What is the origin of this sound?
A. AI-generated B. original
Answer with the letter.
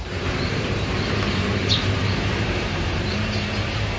A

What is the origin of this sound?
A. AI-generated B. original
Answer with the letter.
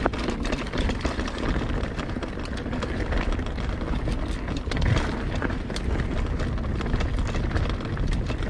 B